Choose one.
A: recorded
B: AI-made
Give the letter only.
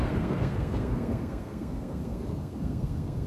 B